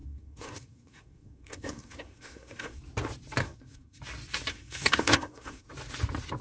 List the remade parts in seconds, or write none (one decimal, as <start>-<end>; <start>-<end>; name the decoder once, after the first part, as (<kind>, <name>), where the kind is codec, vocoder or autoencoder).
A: 0.0-2.8 (codec, SNAC); 3.4-4.0; 4.5-5.7